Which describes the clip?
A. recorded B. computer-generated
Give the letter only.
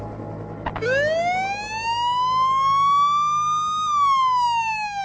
A